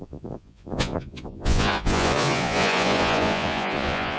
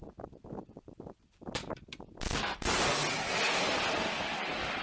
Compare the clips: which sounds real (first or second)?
second